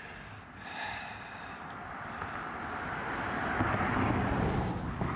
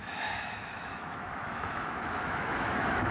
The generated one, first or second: second